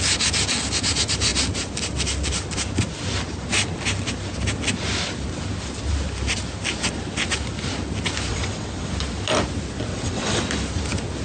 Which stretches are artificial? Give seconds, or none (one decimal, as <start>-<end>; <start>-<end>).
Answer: 8.3-8.9; 9.9-10.4